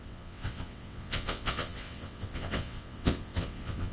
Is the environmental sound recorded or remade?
remade